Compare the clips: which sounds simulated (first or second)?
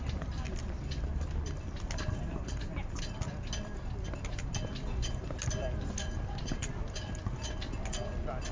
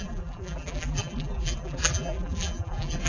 second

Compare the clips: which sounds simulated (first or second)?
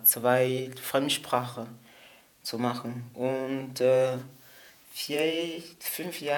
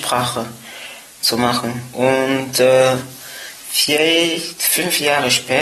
first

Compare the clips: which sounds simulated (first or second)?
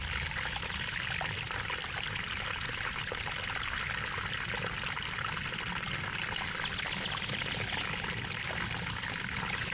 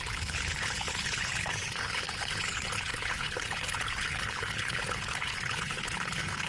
second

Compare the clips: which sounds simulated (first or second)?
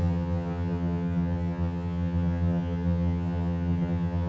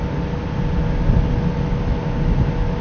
first